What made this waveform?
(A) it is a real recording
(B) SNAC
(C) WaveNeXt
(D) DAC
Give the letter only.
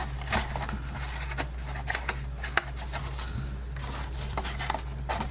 A